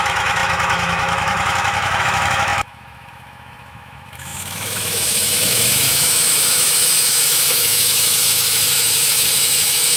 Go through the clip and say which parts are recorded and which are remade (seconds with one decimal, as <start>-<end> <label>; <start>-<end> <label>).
0.0-10.0 remade